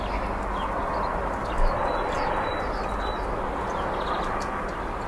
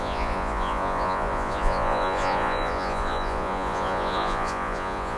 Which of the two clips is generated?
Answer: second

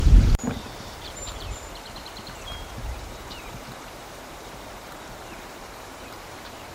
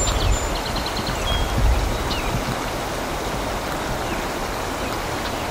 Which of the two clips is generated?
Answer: first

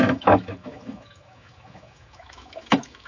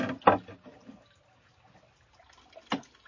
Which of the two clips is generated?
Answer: first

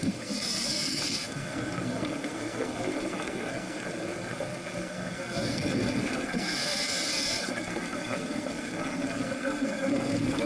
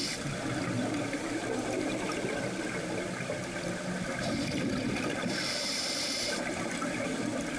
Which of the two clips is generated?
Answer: first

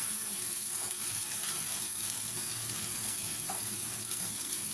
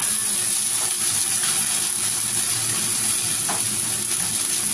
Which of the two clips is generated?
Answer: first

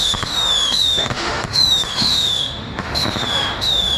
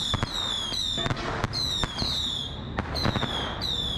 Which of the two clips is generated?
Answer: first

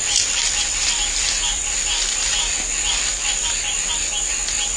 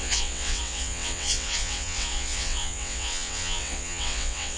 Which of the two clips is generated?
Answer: second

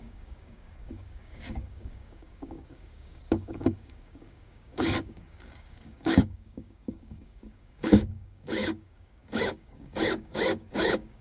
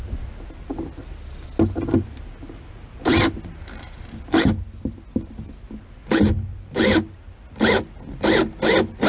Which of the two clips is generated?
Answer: first